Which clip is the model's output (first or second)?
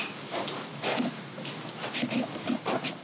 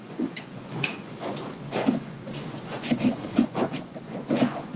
second